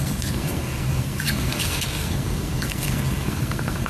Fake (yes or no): yes